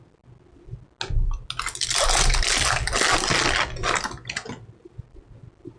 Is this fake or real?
real